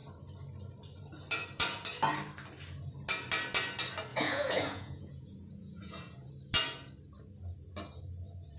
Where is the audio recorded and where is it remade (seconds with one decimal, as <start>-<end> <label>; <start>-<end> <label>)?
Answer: 0.0-4.1 recorded; 4.1-6.3 remade; 6.3-8.6 recorded